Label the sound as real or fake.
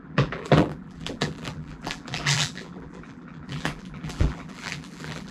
fake